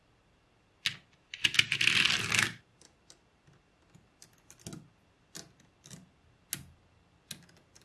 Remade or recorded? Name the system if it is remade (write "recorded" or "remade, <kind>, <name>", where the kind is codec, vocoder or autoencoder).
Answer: recorded